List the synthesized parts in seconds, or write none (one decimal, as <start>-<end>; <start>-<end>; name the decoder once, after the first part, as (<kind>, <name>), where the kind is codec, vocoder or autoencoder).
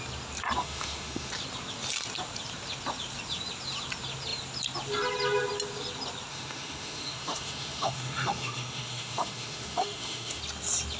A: 0.6-1.3 (autoencoder, DAC-VAE); 6.3-10.4